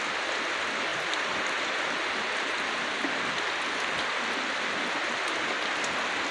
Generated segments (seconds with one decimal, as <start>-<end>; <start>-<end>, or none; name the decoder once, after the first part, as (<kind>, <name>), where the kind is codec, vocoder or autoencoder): none